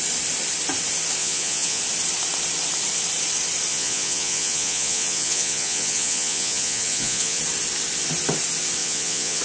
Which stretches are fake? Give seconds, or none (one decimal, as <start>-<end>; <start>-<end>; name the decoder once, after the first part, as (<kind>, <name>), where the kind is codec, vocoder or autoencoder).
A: 1.2-1.8 (vocoder, Vocos); 3.7-7.4; 8.8-9.4